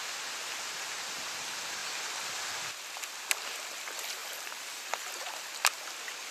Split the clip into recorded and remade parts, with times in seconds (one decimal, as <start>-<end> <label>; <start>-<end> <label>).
0.0-4.2 recorded; 4.2-5.3 remade; 5.3-6.3 recorded